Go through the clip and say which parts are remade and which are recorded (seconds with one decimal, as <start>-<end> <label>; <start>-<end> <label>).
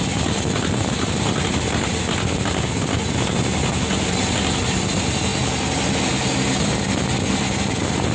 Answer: 0.0-8.1 recorded